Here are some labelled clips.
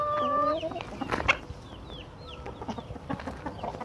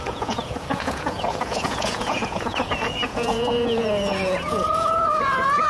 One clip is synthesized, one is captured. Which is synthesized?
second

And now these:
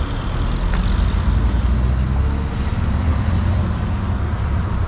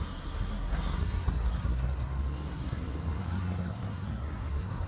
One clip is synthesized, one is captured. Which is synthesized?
second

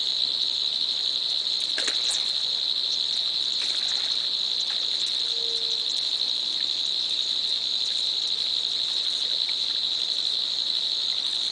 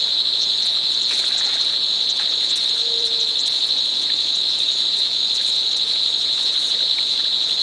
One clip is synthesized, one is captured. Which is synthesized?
second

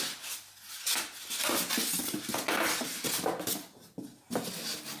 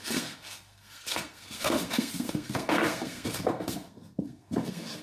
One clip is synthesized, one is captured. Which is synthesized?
second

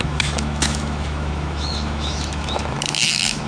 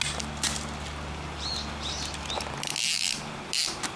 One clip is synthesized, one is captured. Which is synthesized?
first